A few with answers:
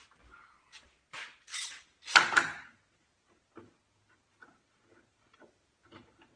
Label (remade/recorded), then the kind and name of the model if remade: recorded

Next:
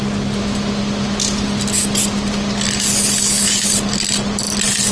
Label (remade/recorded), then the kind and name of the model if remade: recorded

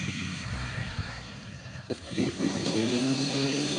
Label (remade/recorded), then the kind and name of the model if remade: remade, codec, SNAC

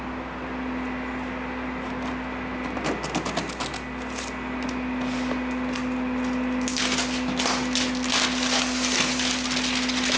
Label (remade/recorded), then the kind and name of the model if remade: recorded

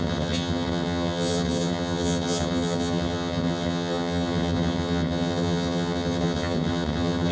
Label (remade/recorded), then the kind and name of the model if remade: remade, vocoder, HiFi-GAN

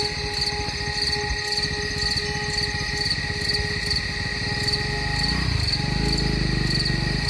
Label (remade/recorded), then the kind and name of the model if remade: recorded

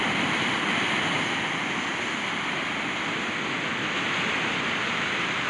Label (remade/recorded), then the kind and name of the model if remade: recorded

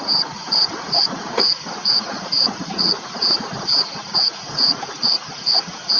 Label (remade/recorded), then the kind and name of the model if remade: remade, vocoder, Vocos